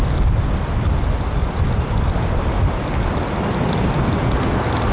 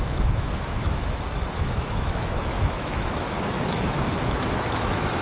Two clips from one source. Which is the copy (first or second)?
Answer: second